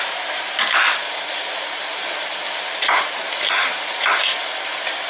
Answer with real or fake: real